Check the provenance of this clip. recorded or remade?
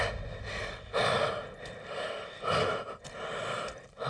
recorded